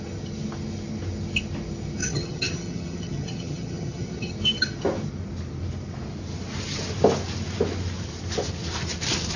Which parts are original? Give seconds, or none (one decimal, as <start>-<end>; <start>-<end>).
0.0-2.0; 4.3-9.4